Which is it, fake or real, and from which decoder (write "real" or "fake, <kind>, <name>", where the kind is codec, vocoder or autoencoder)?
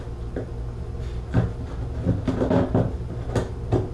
real